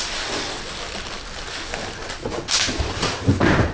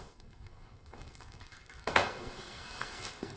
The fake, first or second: second